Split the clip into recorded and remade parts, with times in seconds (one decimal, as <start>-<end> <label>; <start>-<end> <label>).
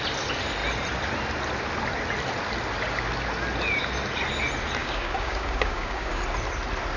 0.0-4.8 recorded; 4.8-6.2 remade; 6.2-7.0 recorded